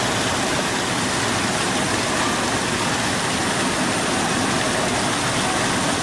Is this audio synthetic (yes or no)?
no